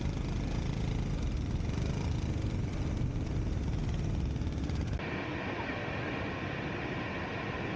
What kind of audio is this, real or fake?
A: real